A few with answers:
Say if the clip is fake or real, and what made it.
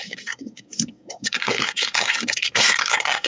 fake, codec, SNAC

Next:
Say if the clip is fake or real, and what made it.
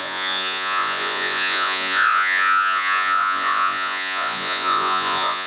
fake, vocoder, Vocos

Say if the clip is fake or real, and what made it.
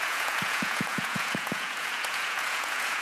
fake, vocoder, Vocos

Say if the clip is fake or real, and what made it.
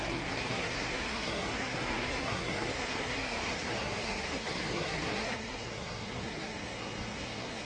fake, codec, SNAC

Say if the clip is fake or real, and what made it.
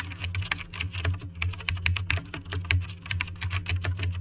real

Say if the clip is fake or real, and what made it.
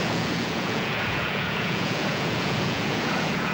fake, vocoder, Vocos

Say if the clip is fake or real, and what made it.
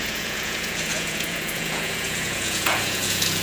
fake, vocoder, Vocos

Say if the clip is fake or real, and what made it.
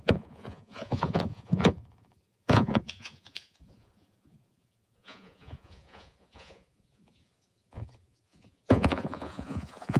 fake, vocoder, Vocos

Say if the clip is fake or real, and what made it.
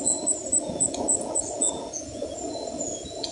fake, vocoder, Vocos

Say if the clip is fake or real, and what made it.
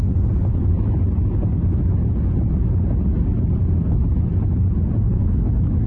real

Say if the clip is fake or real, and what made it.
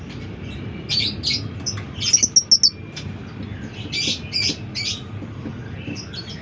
real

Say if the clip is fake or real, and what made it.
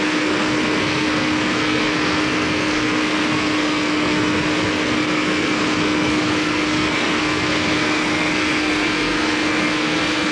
fake, codec, SNAC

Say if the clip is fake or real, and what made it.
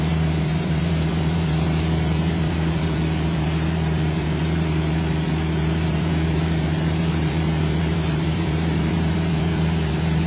fake, vocoder, BigVGAN v2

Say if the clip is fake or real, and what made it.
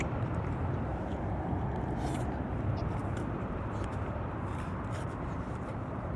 fake, vocoder, BigVGAN v2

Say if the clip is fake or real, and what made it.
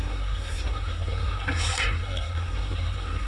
fake, codec, SNAC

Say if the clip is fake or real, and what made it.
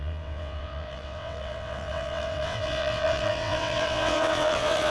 fake, vocoder, WaveNeXt